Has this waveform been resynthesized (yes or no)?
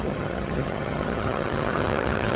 yes